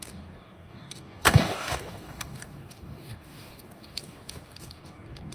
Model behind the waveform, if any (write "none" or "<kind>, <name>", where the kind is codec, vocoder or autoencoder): codec, DAC